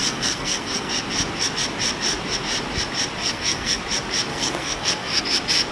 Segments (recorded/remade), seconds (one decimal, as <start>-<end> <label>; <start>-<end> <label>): 0.0-0.9 remade; 0.9-3.2 recorded; 3.2-3.8 remade; 3.8-4.3 recorded; 4.3-5.2 remade; 5.2-5.7 recorded